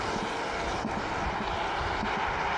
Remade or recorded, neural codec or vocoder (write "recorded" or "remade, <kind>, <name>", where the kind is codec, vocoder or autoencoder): recorded